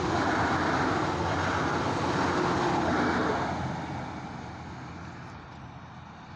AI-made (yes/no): no